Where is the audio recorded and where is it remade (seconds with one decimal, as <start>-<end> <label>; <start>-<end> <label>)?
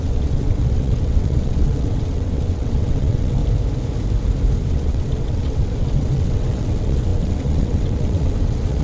0.0-3.4 remade; 3.4-4.7 recorded; 4.7-8.8 remade